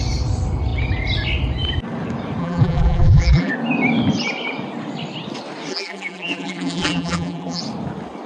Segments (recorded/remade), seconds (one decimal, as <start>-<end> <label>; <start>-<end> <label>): 0.0-2.4 recorded; 2.4-3.5 remade; 3.5-5.7 recorded; 5.7-7.6 remade; 7.6-8.3 recorded